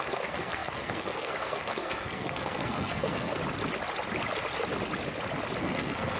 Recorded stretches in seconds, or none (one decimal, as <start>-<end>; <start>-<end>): 3.4-5.6